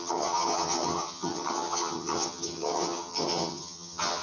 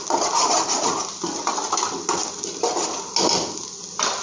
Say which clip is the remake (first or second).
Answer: first